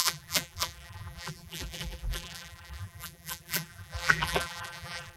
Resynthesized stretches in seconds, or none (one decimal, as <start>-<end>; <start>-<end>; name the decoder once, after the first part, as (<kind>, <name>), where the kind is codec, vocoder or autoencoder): 0.0-5.2 (vocoder, BigVGAN v2)